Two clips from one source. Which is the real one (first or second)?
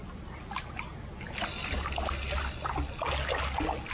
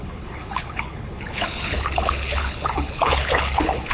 first